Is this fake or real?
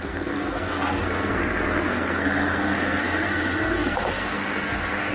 fake